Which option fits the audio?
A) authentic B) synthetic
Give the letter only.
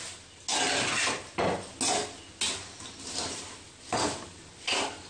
A